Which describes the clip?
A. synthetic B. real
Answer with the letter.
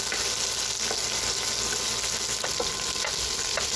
B